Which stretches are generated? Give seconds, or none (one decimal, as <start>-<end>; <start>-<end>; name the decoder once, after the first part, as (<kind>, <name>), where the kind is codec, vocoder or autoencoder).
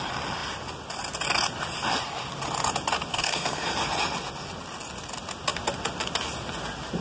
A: 3.1-3.7 (codec, SNAC)